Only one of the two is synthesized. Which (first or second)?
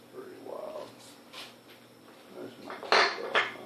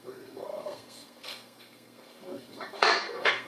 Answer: second